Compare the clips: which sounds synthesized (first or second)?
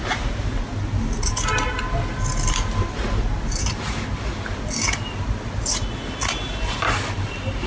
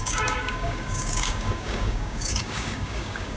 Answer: second